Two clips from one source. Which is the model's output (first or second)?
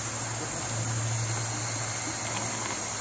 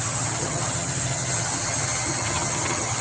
second